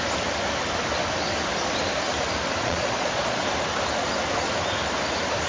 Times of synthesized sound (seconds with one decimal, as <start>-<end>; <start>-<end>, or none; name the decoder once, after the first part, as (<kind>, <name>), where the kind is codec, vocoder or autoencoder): 2.6-3.4 (vocoder, Vocos)